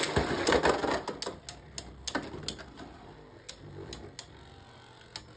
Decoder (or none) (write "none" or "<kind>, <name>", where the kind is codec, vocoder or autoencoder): none